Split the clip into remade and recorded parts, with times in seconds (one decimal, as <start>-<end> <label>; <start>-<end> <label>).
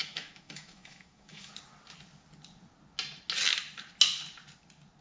0.0-1.5 remade; 1.5-5.0 recorded